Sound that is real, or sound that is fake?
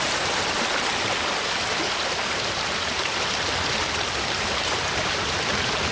real